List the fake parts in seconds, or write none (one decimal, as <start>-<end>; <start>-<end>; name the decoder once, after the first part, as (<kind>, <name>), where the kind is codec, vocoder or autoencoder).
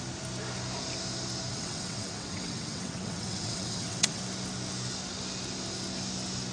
1.5-4.2 (vocoder, WaveNeXt)